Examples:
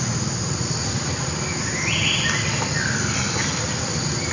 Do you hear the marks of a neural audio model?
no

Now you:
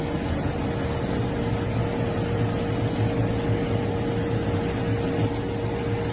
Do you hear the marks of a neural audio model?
no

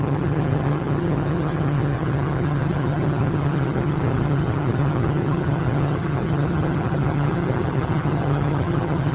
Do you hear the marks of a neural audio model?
yes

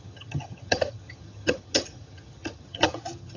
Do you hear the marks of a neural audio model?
yes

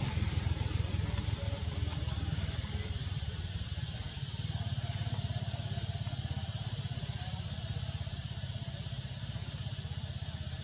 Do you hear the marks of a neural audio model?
no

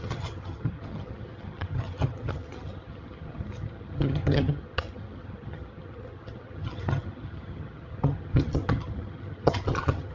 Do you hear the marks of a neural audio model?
yes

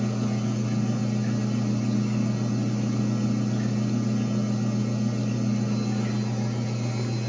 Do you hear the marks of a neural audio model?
no